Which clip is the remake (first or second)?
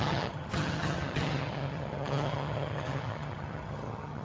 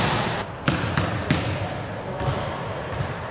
first